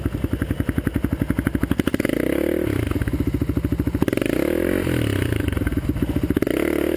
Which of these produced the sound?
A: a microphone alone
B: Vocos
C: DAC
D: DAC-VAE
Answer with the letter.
A